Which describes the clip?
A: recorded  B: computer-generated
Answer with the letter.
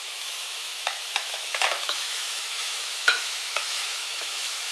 B